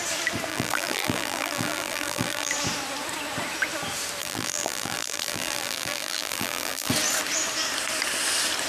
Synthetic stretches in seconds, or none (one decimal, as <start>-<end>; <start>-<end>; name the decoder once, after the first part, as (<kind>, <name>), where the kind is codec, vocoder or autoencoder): 0.5-2.5 (vocoder, BigVGAN v2); 4.2-6.9